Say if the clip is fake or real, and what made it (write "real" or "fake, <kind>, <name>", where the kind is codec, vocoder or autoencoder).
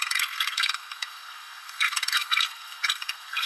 fake, codec, SNAC